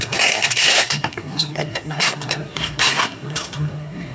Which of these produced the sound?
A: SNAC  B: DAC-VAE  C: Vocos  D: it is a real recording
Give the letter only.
A